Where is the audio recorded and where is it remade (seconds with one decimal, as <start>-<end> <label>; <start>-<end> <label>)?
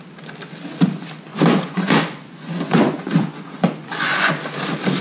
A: 0.0-1.3 recorded; 1.3-4.3 remade; 4.3-5.0 recorded